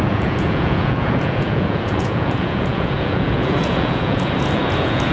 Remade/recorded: remade